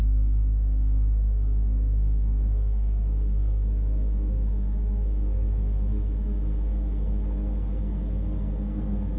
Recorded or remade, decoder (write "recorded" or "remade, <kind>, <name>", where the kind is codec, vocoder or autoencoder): remade, codec, SNAC